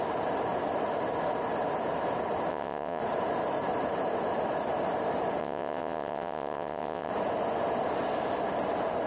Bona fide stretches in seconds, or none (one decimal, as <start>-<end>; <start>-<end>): 0.0-2.5; 3.0-5.4; 7.1-9.1